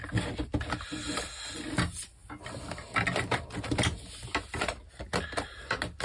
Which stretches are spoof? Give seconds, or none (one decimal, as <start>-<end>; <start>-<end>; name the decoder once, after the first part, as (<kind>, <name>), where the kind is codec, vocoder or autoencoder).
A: none